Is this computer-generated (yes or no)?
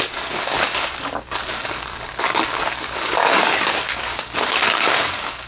yes